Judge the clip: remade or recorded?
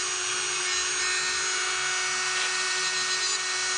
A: recorded